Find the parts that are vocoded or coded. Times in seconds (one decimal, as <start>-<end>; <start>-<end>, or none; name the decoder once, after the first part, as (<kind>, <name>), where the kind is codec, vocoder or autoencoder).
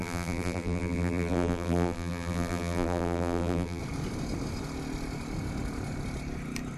0.0-3.8 (vocoder, BigVGAN v2)